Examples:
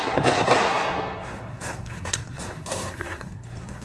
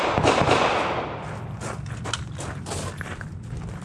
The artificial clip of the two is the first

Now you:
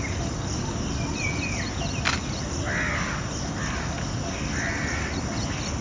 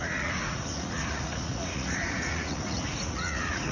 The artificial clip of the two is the second